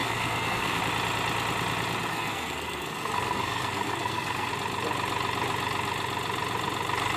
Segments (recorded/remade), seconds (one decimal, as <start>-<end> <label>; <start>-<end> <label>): 0.0-0.8 remade; 0.8-2.1 recorded; 2.1-4.5 remade; 4.5-7.2 recorded